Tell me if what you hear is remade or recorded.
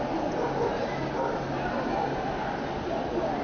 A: recorded